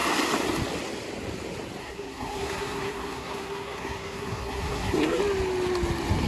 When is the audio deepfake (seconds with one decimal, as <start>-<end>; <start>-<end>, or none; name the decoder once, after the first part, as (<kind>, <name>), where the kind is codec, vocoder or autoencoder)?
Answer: 1.8-5.2 (codec, SNAC)